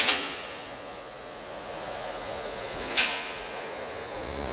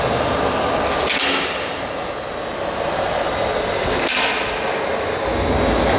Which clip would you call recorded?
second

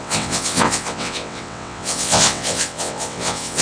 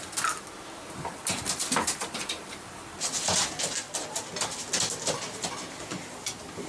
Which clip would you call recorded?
second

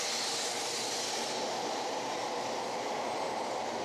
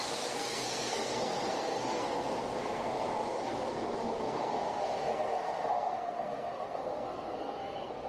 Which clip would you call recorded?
first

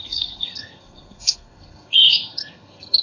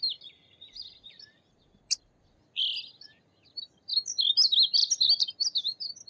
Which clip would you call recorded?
second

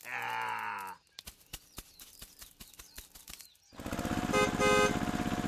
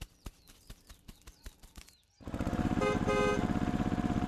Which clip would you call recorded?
first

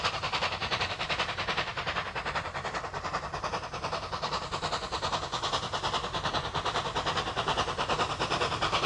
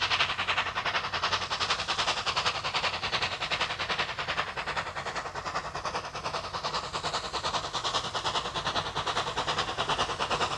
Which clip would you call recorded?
second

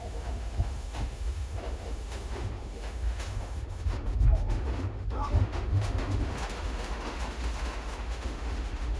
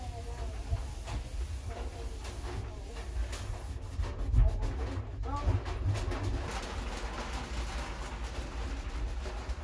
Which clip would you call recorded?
second